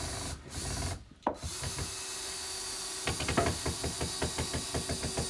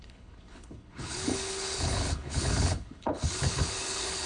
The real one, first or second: first